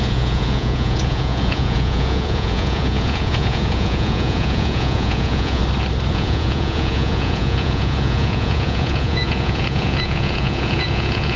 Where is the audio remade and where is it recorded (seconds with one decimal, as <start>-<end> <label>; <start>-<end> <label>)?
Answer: 0.0-5.6 remade; 5.6-6.1 recorded; 6.1-11.4 remade